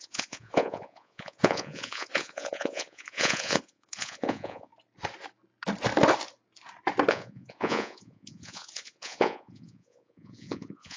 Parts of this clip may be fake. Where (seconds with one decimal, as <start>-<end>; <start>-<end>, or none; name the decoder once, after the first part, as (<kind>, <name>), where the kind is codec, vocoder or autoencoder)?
0.0-4.7 (vocoder, Vocos); 7.1-11.0